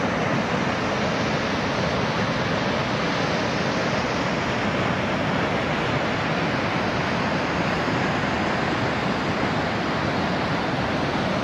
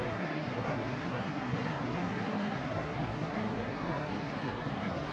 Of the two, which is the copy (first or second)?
second